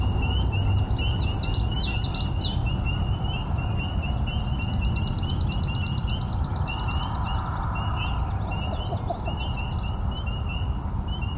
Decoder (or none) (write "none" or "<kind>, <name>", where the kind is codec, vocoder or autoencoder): none